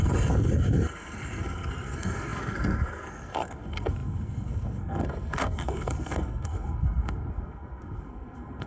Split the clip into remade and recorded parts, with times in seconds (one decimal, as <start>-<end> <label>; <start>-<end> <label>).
0.0-8.7 remade